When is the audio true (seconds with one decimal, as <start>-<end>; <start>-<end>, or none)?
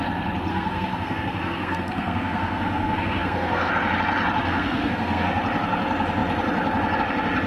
0.0-0.5; 3.7-4.4; 5.4-7.5